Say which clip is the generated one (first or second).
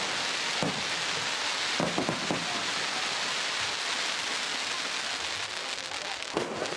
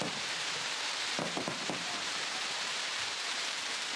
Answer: second